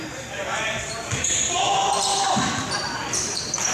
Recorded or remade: remade